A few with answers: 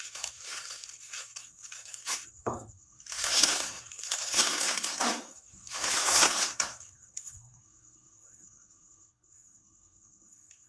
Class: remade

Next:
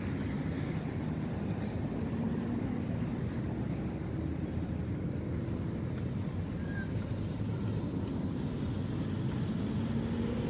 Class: recorded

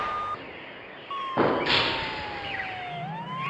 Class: recorded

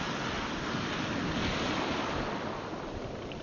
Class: recorded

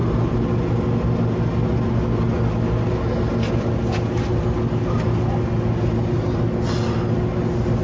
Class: recorded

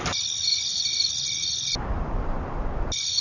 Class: recorded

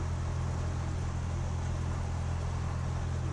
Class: recorded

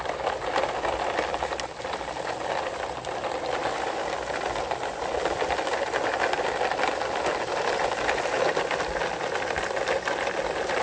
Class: recorded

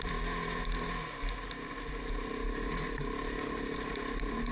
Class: recorded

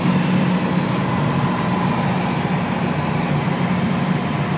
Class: recorded